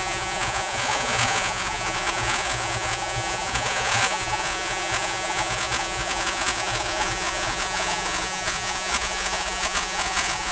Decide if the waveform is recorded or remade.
remade